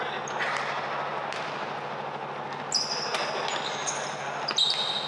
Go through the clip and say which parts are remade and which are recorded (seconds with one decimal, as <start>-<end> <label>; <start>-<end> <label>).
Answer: 0.0-5.1 recorded